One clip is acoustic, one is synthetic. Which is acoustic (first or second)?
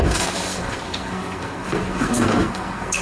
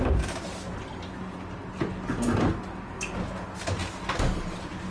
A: second